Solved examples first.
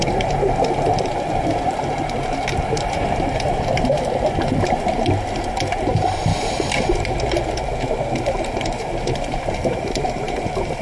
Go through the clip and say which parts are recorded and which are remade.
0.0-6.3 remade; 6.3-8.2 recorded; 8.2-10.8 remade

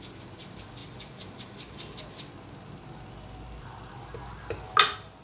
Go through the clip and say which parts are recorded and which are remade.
0.0-5.2 recorded

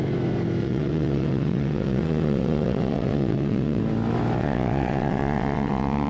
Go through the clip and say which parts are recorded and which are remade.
0.0-0.6 recorded; 0.6-3.8 remade; 3.8-4.4 recorded; 4.4-6.1 remade

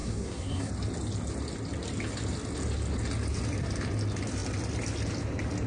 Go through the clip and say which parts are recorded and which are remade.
0.0-0.7 remade; 0.7-5.7 recorded

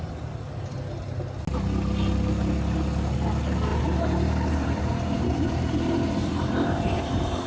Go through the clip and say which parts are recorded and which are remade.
0.0-3.7 recorded; 3.7-7.5 remade

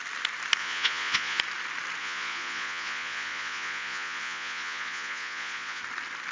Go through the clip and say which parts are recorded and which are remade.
0.0-0.6 recorded; 0.6-1.4 remade; 1.4-2.0 recorded; 2.0-5.8 remade; 5.8-6.3 recorded

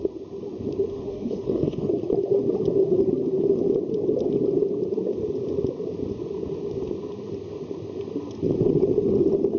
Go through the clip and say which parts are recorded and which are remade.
0.0-0.9 recorded; 0.9-1.9 remade; 1.9-9.6 recorded